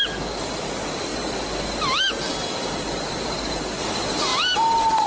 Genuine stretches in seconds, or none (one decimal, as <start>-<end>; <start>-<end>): 0.0-5.1